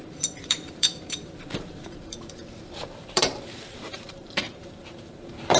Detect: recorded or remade remade